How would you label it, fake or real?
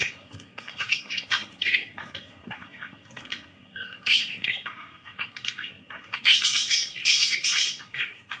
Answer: fake